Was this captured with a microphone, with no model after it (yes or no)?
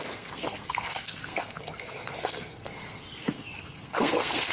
no